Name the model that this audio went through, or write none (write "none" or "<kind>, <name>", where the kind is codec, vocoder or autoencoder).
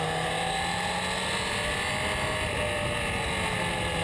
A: none